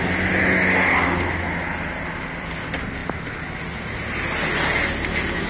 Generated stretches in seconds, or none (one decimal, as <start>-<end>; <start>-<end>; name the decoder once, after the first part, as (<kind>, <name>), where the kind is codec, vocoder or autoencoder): none